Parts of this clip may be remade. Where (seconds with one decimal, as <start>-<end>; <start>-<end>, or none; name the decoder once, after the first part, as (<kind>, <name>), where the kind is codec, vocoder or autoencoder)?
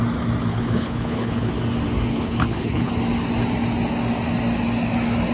0.5-1.5 (codec, HILCodec); 2.1-2.9